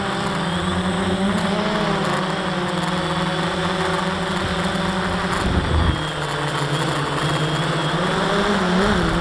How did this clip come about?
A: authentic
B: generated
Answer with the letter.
A